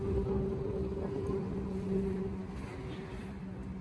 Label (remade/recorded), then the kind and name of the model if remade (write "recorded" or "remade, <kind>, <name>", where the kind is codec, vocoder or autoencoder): recorded